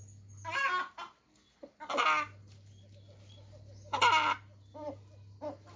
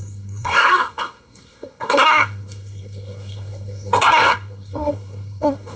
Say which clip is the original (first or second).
first